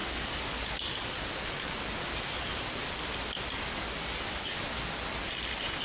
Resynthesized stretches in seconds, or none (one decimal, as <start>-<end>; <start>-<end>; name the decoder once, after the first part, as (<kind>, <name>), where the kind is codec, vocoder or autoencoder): none